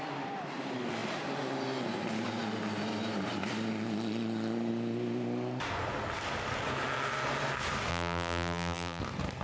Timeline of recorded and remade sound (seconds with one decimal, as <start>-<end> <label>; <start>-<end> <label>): 0.0-7.9 recorded; 7.9-9.0 remade; 9.0-9.4 recorded

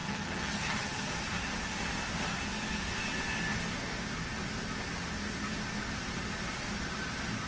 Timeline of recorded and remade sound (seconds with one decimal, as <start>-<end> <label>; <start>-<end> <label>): 0.0-1.1 remade; 1.1-7.5 recorded

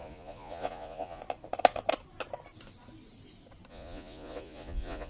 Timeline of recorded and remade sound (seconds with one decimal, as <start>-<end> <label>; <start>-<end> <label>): 0.0-1.2 remade; 1.2-3.7 recorded; 3.7-5.1 remade

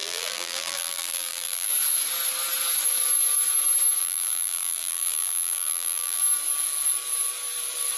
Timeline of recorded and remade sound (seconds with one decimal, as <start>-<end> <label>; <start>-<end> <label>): 0.0-1.7 remade; 1.7-4.0 recorded; 4.0-6.2 remade; 6.2-8.0 recorded